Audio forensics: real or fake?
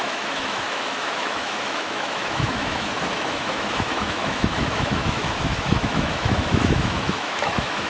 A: fake